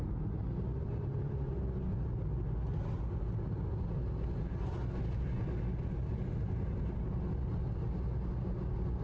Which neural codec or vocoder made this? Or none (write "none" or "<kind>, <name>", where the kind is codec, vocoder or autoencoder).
none